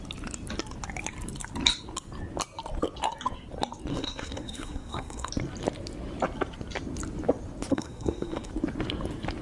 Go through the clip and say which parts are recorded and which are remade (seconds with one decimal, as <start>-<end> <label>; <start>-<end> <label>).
0.0-3.9 recorded; 3.9-5.3 remade; 5.3-7.7 recorded; 7.7-8.5 remade; 8.5-9.4 recorded